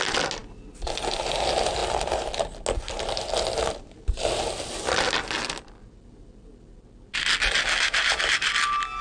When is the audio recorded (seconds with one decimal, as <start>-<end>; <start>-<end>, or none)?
0.0-9.0